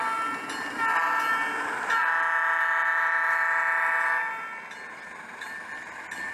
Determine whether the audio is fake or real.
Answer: real